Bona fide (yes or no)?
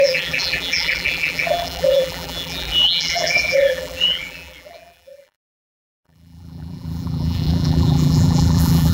no